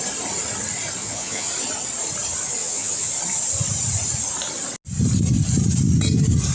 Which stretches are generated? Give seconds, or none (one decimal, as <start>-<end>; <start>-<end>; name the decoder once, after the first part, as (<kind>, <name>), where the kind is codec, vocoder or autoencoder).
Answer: 1.0-1.5 (vocoder, Vocos); 2.6-3.1